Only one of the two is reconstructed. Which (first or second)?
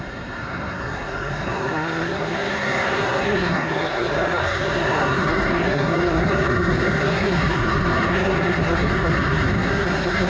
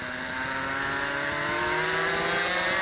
first